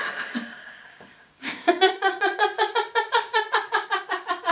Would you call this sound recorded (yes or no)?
no